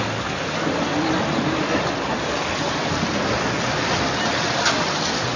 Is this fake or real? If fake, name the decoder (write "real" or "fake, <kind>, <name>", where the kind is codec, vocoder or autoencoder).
real